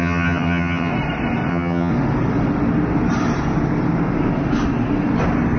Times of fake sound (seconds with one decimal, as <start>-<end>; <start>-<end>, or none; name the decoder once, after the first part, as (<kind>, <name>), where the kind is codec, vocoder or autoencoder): 0.0-0.9 (vocoder, HiFi-GAN); 1.5-1.9